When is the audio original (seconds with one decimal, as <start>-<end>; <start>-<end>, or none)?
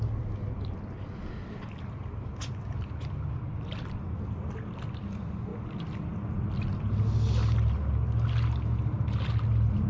0.0-5.5; 6.5-9.9